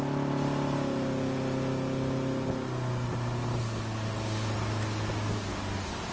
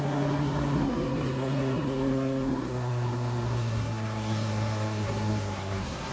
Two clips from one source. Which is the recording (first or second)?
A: first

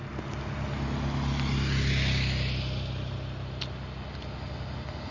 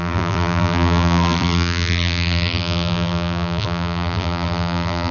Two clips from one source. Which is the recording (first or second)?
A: first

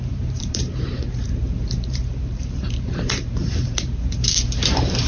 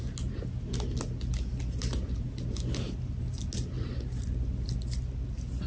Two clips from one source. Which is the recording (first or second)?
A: second